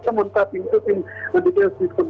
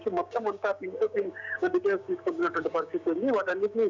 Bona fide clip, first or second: first